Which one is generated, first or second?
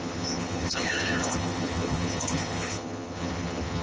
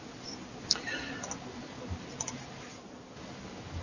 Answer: first